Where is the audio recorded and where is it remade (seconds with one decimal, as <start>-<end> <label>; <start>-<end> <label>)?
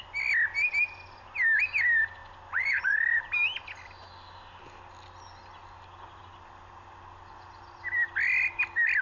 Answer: 0.0-9.0 recorded